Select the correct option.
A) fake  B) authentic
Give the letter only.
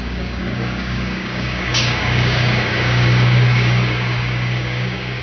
A